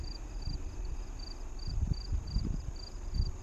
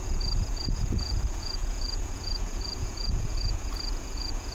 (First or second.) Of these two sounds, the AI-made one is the second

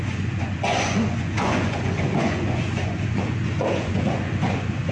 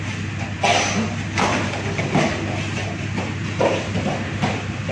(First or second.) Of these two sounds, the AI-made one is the first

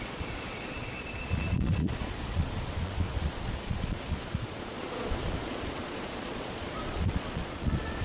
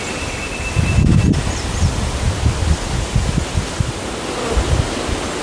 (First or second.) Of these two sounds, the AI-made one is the first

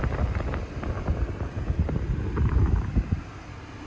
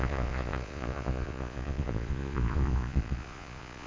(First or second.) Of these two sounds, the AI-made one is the second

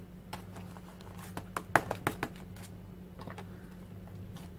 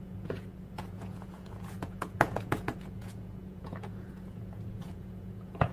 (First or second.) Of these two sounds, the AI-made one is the second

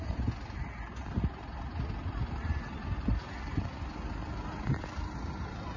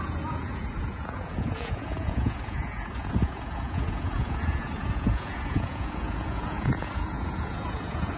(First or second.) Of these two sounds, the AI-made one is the second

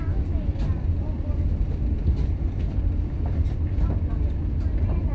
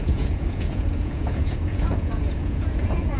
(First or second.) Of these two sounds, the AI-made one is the second